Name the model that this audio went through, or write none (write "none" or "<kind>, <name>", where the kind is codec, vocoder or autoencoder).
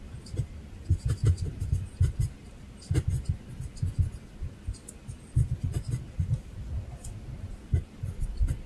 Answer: none